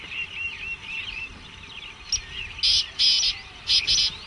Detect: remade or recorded recorded